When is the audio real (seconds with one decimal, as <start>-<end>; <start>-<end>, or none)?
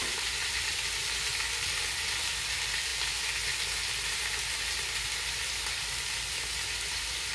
1.0-1.8; 2.9-6.7